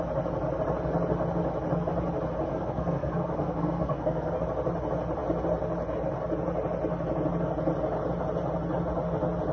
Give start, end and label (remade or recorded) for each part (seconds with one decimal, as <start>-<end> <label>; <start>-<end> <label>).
0.0-2.5 recorded; 2.5-4.4 remade; 4.4-9.5 recorded